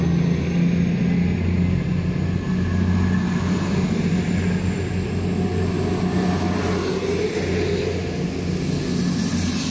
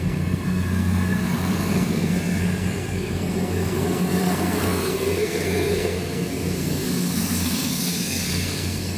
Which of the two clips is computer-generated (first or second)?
second